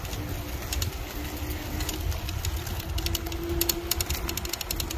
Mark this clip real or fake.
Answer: real